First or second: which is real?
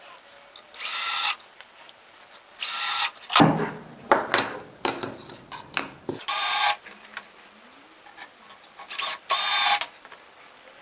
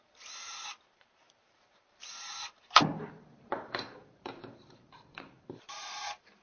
first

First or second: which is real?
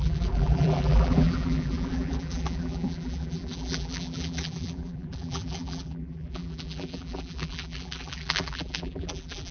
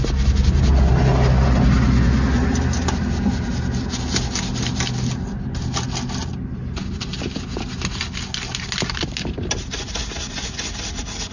second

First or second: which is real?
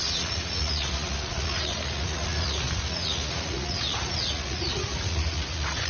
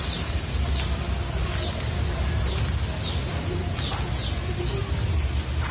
second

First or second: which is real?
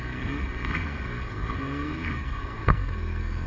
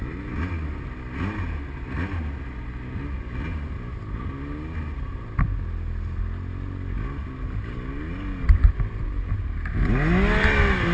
second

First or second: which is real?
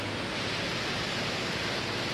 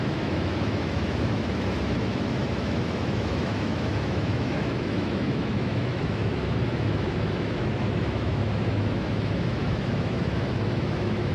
first